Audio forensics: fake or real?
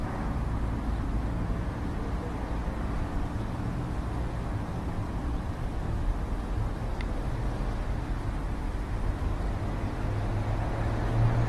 real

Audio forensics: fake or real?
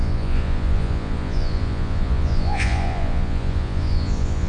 fake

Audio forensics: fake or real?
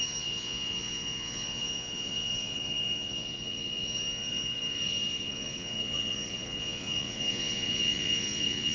fake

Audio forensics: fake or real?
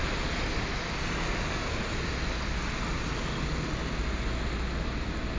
real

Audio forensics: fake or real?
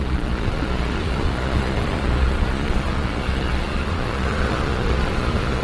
fake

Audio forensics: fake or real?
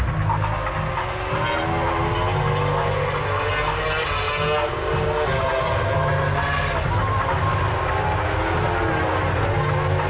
real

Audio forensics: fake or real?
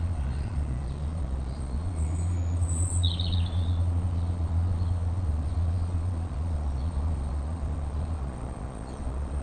fake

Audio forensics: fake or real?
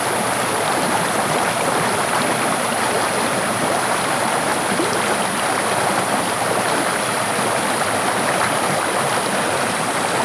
real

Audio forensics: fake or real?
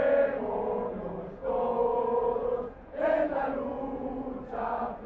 fake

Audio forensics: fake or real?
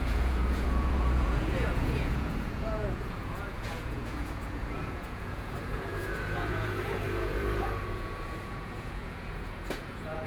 fake